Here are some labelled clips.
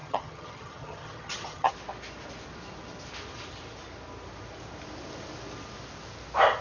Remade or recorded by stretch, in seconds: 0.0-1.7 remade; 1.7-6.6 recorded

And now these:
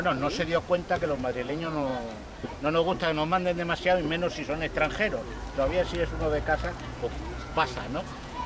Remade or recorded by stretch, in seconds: 0.0-1.9 remade; 1.9-6.8 recorded; 6.8-8.5 remade

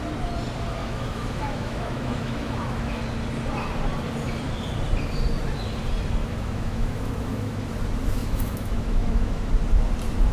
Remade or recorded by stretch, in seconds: 0.0-0.8 recorded; 0.8-3.0 remade; 3.0-6.2 recorded; 6.2-7.6 remade; 7.6-8.2 recorded; 8.2-9.5 remade; 9.5-10.3 recorded

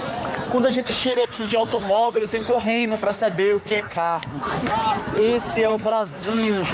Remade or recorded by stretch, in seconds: 0.0-0.7 recorded; 0.7-4.7 remade; 4.7-5.7 recorded; 5.7-6.7 remade

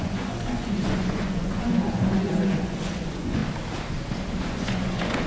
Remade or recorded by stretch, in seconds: 0.0-3.4 remade; 3.4-4.4 recorded; 4.4-5.3 remade